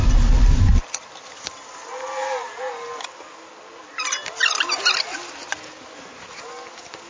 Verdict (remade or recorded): recorded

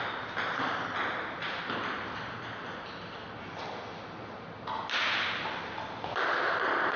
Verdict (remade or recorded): recorded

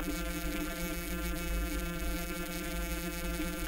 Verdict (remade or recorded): remade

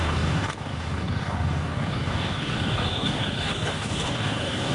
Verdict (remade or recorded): remade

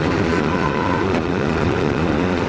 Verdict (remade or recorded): remade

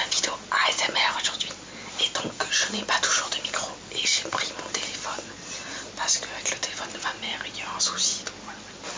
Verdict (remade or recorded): recorded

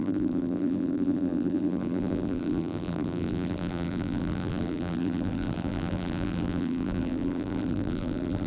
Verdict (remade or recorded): remade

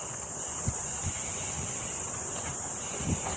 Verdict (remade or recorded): remade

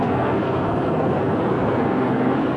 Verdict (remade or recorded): remade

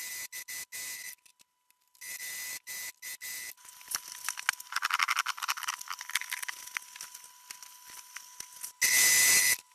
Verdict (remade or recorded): recorded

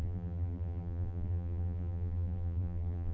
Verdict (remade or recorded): remade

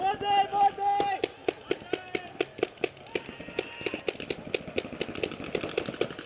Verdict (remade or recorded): recorded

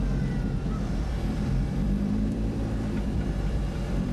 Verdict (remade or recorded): remade